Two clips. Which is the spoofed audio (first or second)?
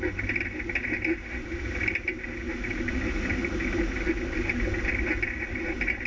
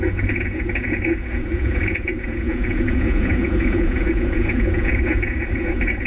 second